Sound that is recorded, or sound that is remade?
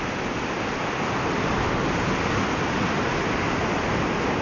recorded